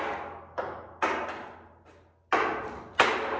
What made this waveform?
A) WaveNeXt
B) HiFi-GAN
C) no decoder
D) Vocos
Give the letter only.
C